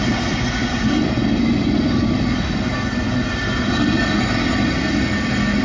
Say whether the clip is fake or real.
real